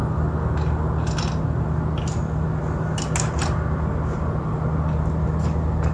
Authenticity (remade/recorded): recorded